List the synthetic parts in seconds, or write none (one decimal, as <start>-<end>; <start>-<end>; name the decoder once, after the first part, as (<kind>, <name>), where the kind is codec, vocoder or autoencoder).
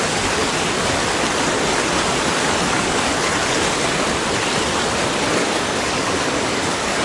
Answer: 0.0-0.4 (codec, DAC); 2.3-3.1; 5.3-7.0